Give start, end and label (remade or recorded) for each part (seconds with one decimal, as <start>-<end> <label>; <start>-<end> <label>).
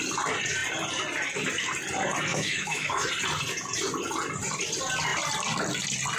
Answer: 0.0-2.3 recorded; 2.3-3.1 remade; 3.1-6.2 recorded